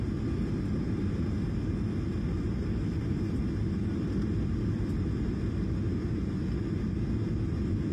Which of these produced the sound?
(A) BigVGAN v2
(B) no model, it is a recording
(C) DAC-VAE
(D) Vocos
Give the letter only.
B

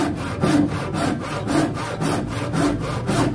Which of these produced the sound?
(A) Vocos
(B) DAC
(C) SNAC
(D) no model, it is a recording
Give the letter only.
D